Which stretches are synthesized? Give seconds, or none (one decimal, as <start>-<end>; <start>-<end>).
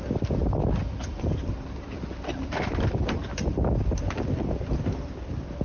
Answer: none